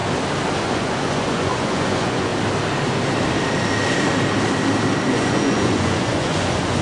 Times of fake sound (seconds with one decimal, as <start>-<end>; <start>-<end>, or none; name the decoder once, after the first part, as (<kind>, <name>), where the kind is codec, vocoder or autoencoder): 0.6-2.3 (vocoder, Vocos); 5.1-6.8